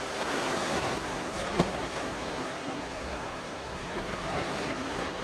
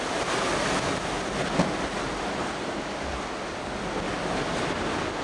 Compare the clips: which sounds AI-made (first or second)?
first